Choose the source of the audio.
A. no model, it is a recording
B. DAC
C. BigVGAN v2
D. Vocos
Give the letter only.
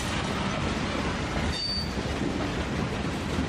A